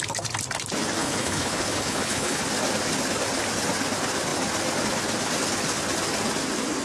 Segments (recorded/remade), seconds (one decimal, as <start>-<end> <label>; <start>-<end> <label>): 0.0-1.0 recorded; 1.0-2.4 remade; 2.4-6.8 recorded